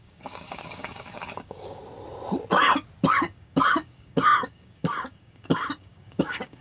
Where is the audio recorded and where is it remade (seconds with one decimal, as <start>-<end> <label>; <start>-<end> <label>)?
0.0-1.8 remade; 1.8-3.2 recorded; 3.2-6.6 remade